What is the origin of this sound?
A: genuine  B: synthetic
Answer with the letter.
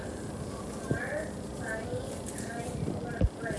B